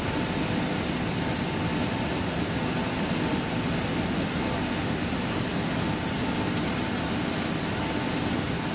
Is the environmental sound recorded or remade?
recorded